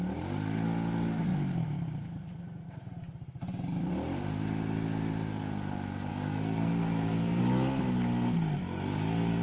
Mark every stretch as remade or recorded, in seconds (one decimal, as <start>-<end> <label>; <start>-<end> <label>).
0.0-6.1 recorded; 6.1-7.4 remade; 7.4-9.4 recorded